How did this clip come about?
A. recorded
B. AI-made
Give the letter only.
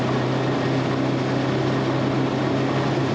A